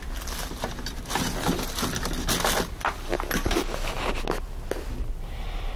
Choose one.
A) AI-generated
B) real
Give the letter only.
B